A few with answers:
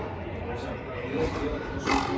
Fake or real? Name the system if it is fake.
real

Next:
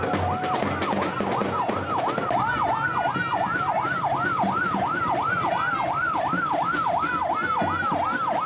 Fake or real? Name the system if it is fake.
real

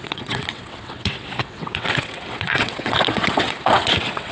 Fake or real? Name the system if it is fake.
fake, vocoder, WaveNeXt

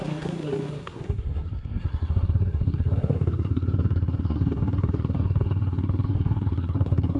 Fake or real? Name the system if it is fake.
fake, codec, SNAC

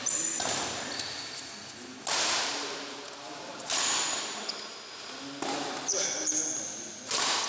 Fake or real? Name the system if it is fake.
real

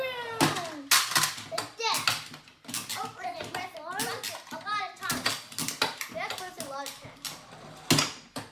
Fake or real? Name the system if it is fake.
real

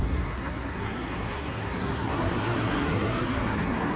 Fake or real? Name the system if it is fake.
fake, codec, SNAC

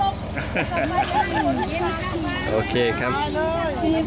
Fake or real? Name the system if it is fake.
real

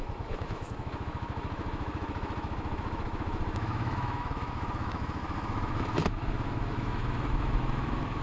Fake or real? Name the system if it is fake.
fake, autoencoder, DAC-VAE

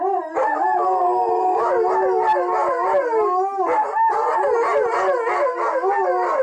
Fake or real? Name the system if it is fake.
real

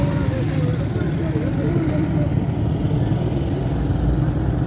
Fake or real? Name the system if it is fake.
real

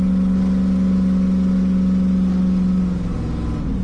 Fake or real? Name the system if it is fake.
real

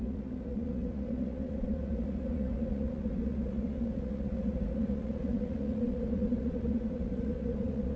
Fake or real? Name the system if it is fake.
fake, vocoder, Vocos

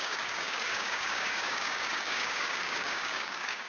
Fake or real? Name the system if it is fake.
fake, codec, DAC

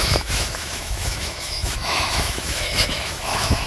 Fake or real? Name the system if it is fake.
fake, autoencoder, DAC-VAE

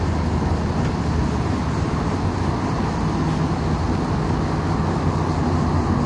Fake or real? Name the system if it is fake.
real